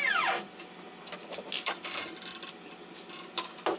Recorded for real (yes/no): yes